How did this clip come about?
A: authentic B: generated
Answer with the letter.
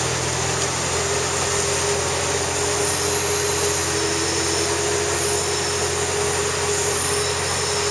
A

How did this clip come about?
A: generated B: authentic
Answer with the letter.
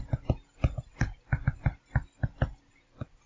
B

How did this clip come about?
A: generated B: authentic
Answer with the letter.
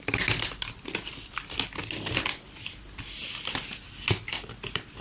B